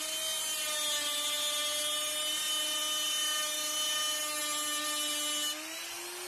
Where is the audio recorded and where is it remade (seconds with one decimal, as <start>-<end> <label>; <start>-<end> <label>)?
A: 0.0-6.3 recorded